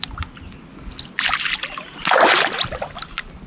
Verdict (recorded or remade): recorded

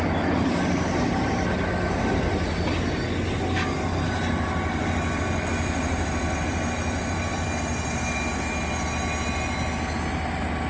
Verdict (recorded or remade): recorded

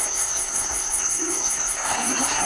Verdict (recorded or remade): remade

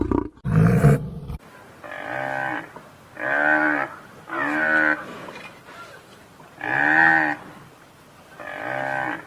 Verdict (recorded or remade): recorded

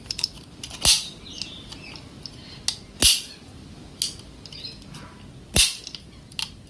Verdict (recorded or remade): recorded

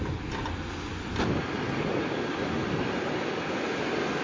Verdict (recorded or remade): recorded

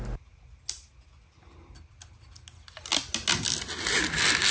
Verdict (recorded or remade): recorded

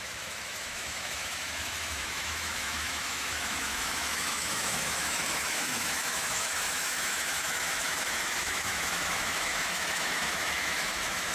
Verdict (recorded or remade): remade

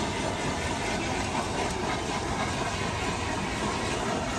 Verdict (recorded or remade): recorded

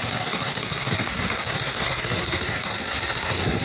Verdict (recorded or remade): remade